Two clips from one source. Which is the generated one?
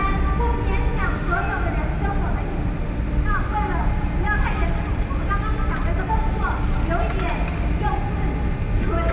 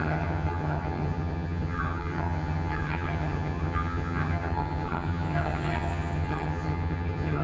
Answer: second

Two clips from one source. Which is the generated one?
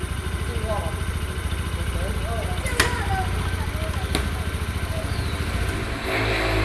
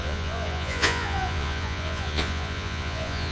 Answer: second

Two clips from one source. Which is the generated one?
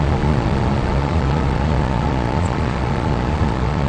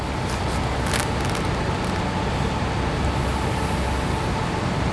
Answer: first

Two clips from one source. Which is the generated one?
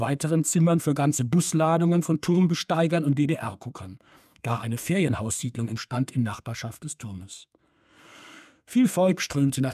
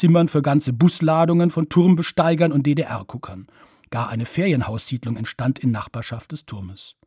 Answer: first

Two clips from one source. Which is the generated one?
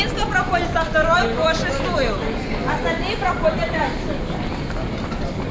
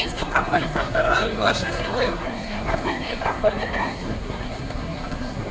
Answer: second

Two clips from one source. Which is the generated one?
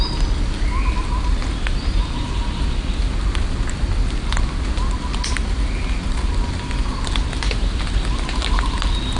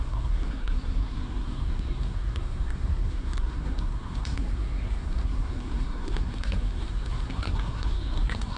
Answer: second